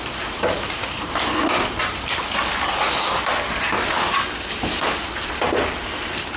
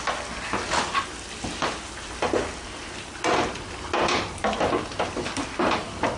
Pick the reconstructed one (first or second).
first